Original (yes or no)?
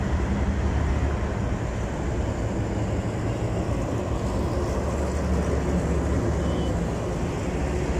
yes